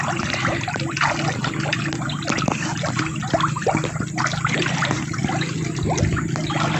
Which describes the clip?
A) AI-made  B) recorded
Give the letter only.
B